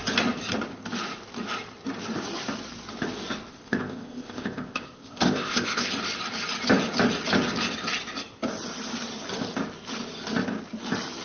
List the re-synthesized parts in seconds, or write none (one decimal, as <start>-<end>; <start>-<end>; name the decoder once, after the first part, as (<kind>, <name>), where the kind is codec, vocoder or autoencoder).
3.5-5.9 (codec, ZipCodec)